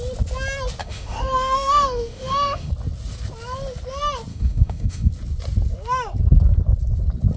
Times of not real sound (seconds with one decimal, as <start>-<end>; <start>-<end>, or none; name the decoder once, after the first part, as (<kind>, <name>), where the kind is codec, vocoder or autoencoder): 0.8-2.7 (autoencoder, DAC-VAE); 4.3-5.1